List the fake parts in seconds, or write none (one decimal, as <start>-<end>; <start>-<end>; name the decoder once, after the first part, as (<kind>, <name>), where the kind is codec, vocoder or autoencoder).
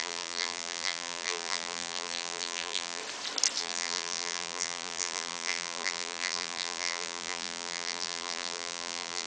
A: 0.0-3.0 (vocoder, BigVGAN v2); 3.6-9.3